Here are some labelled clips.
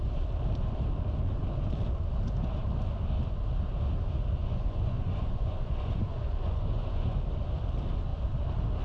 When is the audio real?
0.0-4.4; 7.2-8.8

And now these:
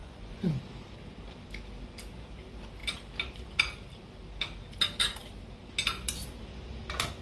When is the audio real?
0.6-7.2

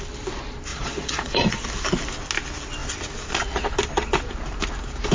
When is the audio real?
0.0-0.7; 1.5-5.1

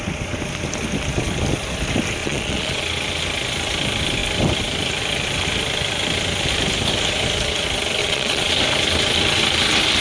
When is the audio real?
0.0-2.2; 2.8-8.0; 8.5-10.0

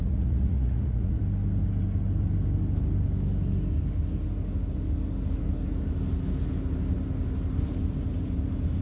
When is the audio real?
1.2-8.8

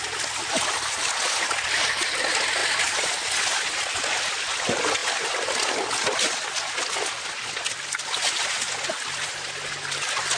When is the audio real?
0.0-10.4

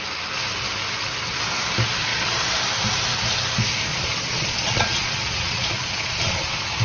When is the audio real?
0.0-2.1; 2.7-3.9

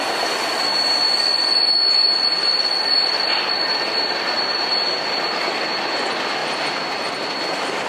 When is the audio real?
0.0-7.9